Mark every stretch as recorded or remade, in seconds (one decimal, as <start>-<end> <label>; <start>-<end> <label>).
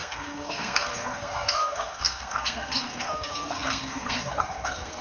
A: 0.0-5.0 remade